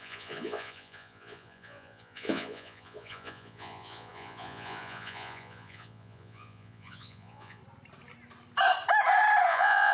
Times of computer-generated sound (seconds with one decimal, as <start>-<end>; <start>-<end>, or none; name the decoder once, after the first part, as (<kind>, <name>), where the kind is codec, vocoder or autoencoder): 0.0-7.6 (vocoder, Vocos); 9.5-9.9